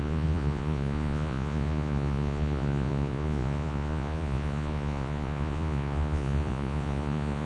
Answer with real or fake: fake